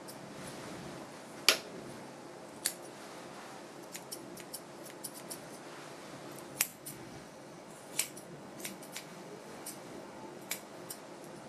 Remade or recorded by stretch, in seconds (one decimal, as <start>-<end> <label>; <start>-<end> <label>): 0.0-6.7 recorded; 6.7-11.0 remade; 11.0-11.5 recorded

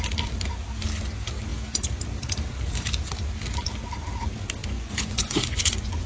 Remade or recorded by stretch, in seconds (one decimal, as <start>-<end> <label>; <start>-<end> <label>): 0.0-4.6 recorded; 4.6-6.1 remade

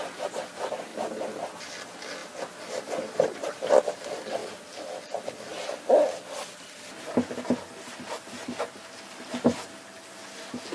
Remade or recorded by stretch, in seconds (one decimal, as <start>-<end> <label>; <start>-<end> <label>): 0.0-10.7 recorded

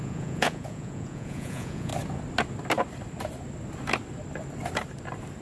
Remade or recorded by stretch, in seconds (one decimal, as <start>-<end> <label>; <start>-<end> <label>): 0.0-1.9 remade; 1.9-5.4 recorded

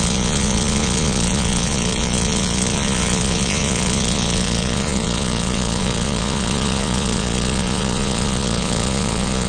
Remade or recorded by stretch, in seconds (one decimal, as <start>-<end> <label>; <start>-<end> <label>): 0.0-9.5 remade

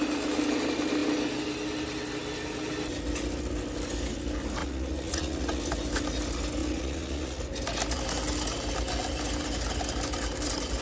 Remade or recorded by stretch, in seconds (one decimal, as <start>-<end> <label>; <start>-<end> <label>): 0.0-4.6 recorded; 4.6-5.6 remade; 5.6-6.6 recorded; 6.6-7.4 remade; 7.4-10.8 recorded